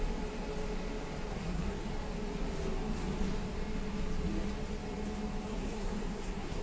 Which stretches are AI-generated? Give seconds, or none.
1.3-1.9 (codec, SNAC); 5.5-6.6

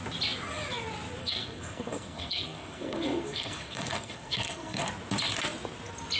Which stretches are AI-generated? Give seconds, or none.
1.2-4.9 (codec, SNAC)

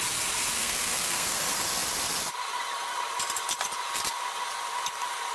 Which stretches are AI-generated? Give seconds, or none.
0.6-1.4 (codec, SNAC)